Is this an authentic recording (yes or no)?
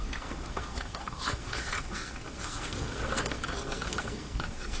no